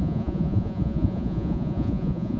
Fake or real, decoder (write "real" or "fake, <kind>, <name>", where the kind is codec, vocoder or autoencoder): fake, vocoder, Vocos